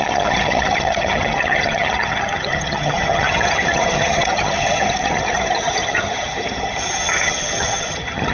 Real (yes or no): no